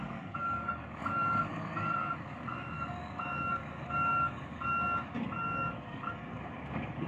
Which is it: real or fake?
fake